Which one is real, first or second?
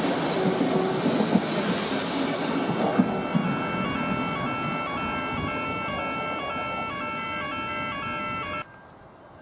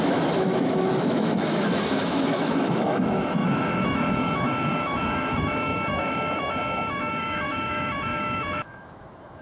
first